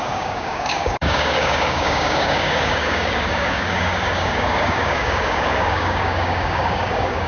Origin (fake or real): fake